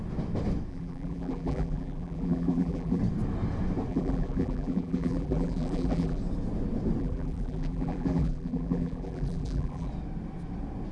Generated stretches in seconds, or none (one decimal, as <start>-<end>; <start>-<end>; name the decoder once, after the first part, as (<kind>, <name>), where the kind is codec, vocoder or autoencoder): 0.7-3.0 (vocoder, BigVGAN v2); 3.9-6.2; 7.0-9.9